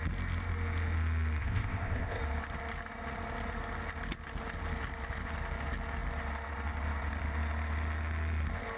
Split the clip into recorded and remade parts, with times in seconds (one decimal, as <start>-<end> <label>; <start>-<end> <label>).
0.0-1.4 recorded; 1.4-2.2 remade; 2.2-8.8 recorded